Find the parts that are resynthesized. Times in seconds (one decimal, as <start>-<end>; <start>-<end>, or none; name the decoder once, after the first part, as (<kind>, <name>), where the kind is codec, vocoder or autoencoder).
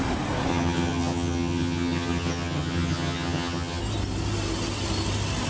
0.5-3.8 (vocoder, HiFi-GAN)